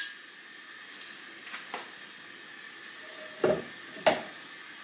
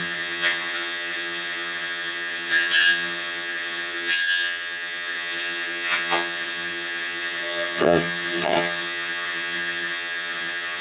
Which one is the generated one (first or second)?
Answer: second